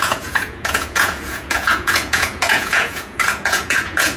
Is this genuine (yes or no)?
no